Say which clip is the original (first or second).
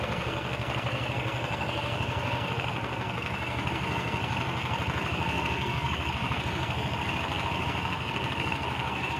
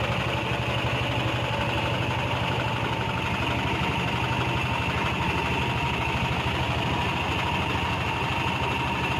second